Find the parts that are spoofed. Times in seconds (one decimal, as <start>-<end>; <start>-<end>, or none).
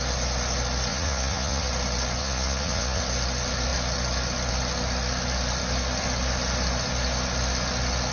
0.9-1.7; 2.2-3.0